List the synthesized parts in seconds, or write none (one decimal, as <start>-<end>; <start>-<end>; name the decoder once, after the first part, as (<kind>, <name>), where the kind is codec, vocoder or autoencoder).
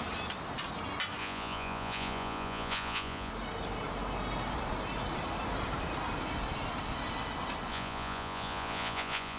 1.2-3.3 (vocoder, Vocos); 7.7-9.4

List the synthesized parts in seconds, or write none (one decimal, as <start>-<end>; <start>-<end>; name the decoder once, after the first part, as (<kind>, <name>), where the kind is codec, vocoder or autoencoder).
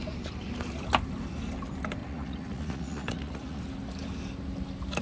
2.0-3.6 (vocoder, Vocos)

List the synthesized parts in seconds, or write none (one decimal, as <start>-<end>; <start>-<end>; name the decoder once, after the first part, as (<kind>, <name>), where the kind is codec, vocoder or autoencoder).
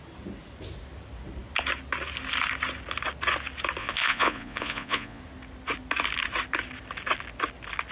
3.8-5.2 (vocoder, Vocos)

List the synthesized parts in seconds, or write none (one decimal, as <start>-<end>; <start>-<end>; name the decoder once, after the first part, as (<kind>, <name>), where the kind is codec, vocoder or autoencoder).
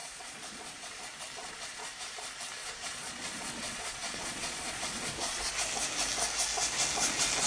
0.0-1.0 (vocoder, Vocos); 1.4-1.9; 2.6-5.5